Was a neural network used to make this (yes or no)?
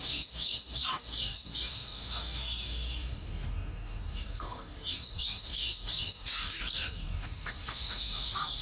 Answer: yes